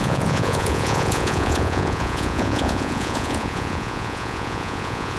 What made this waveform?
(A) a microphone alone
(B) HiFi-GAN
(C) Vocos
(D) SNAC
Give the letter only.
C